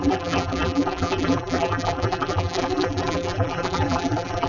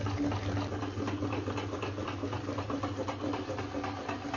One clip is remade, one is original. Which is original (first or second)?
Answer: second